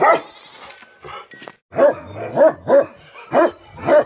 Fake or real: real